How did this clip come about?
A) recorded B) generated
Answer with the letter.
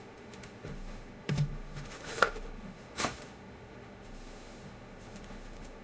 B